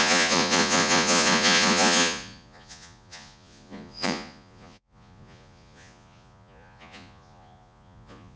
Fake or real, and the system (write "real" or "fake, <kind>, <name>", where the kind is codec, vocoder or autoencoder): fake, vocoder, Vocos